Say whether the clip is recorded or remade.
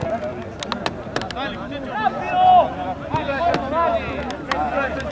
recorded